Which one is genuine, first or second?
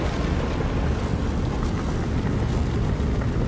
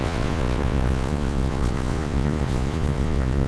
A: first